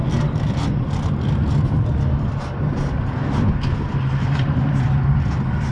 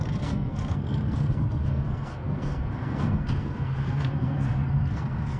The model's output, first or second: second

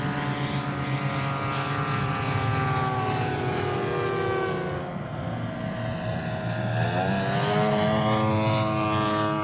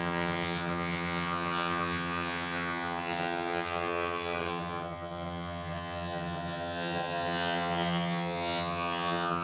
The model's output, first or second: second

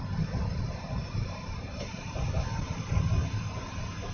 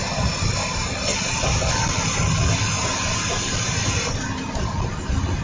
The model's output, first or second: first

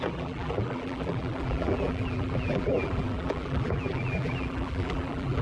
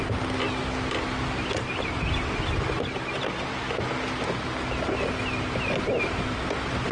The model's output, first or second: first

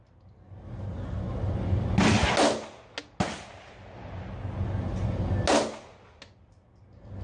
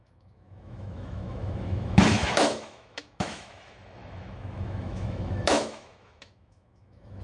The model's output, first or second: second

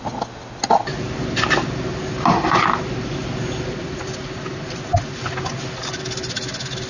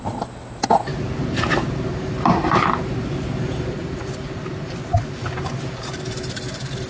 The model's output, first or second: second